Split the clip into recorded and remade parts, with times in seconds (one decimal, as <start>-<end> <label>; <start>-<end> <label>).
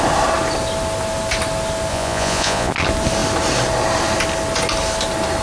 0.0-1.9 recorded; 1.9-2.7 remade; 2.7-5.4 recorded